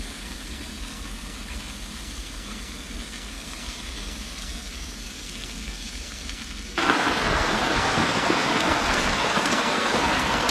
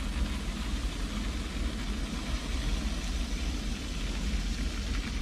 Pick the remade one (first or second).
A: first